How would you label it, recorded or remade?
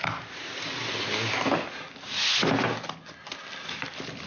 recorded